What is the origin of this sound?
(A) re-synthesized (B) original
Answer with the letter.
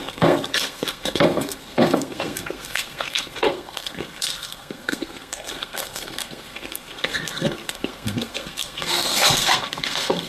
A